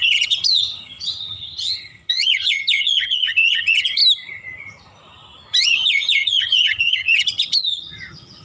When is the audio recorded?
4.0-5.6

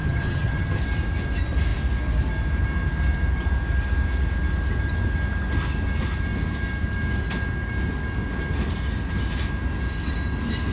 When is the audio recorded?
0.8-10.7